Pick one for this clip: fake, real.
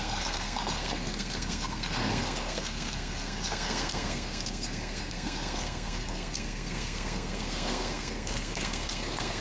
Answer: fake